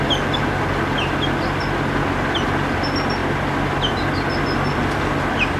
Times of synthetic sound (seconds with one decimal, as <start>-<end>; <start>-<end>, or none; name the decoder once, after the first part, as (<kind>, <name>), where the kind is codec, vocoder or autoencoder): none